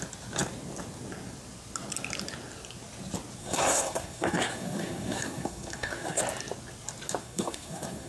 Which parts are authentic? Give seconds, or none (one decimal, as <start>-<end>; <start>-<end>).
0.0-3.4; 6.2-7.2